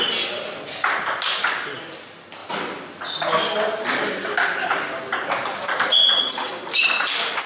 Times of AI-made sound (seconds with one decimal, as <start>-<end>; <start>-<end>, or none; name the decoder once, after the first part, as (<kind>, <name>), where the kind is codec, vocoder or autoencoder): 5.9-6.5 (vocoder, WaveNeXt)

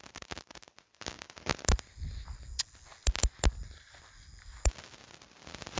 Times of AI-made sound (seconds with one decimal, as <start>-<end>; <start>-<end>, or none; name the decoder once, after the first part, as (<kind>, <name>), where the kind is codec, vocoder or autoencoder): none

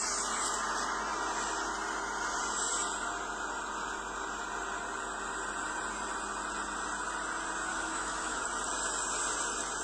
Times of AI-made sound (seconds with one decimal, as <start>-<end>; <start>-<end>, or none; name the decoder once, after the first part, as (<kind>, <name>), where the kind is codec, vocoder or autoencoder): 7.7-8.4 (autoencoder, DAC-VAE)

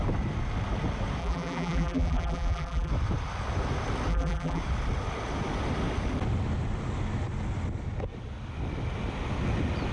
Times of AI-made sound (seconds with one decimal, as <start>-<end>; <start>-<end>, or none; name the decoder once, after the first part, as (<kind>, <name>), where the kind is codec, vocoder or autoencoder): 1.2-2.9 (vocoder, BigVGAN v2); 4.1-4.6

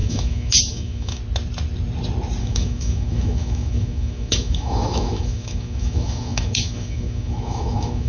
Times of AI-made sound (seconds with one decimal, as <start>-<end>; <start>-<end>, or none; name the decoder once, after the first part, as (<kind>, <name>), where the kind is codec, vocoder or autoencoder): 0.0-1.2 (autoencoder, DAC-VAE); 2.4-8.1

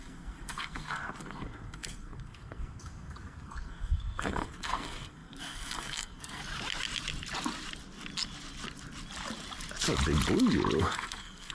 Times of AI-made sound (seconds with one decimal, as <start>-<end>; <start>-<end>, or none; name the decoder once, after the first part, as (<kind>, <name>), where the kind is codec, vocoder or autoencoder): 0.0-6.4 (codec, SNAC); 10.8-11.5

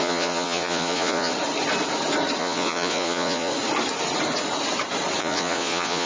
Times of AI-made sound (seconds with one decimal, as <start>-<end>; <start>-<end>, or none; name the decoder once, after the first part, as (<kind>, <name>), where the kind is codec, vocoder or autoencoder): 0.0-1.3 (vocoder, Vocos); 2.4-3.5; 5.2-6.1

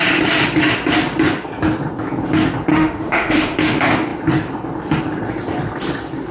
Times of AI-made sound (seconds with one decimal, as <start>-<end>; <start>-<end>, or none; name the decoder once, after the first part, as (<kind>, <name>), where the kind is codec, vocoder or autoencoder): 2.7-3.6 (autoencoder, DAC-VAE)